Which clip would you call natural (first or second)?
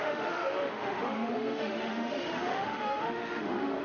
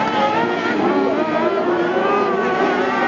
second